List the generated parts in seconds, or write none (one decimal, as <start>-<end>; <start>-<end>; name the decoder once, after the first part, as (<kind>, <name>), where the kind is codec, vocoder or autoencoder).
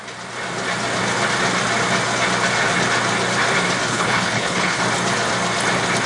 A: 3.9-4.8 (codec, HILCodec)